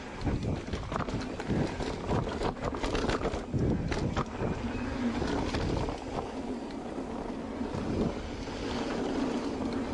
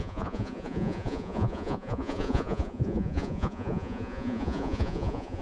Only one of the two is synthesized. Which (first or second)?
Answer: second